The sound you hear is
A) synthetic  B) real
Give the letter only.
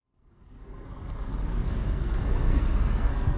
A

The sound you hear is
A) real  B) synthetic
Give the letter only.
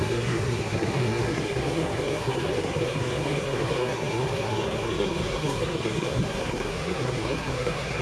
B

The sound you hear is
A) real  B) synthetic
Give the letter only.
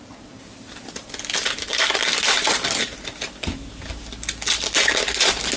A